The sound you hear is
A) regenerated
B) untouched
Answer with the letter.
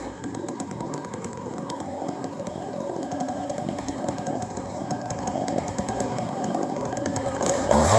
A